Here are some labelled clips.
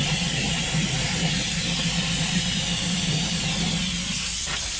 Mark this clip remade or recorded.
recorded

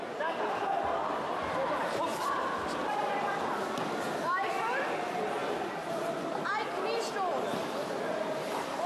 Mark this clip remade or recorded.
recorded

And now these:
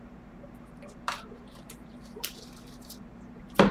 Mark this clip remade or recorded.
remade